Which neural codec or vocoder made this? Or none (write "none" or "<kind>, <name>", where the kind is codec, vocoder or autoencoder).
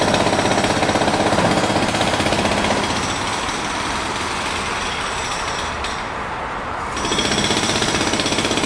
none